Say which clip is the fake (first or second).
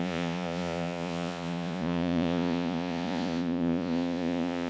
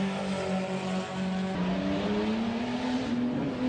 first